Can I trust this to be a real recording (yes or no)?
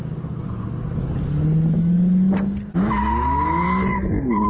yes